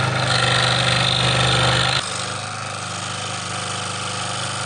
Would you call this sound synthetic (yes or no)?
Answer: no